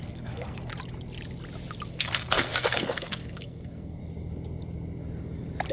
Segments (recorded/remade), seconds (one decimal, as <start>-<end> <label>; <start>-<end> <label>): 0.0-0.7 remade; 0.7-1.9 recorded; 1.9-4.0 remade; 4.0-5.7 recorded